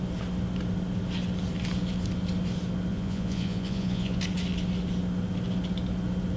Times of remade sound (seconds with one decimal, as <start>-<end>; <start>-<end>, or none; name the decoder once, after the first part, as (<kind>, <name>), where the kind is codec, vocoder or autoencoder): 2.9-4.2 (vocoder, Vocos)